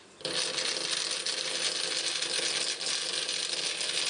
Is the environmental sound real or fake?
real